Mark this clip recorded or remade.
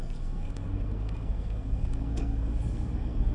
remade